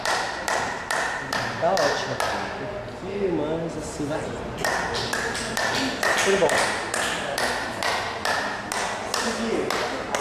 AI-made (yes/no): no